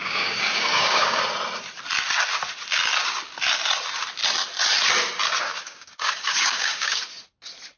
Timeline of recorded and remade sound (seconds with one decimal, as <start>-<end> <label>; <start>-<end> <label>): 0.0-1.2 remade; 1.2-5.5 recorded; 5.5-7.0 remade; 7.0-7.8 recorded